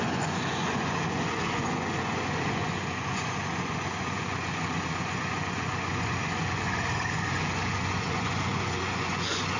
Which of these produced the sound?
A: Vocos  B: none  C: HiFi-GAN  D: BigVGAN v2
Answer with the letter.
A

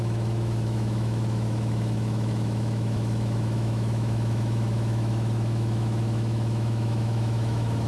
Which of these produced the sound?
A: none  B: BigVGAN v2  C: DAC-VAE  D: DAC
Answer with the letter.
C